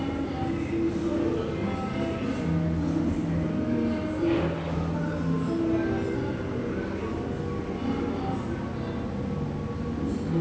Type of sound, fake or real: real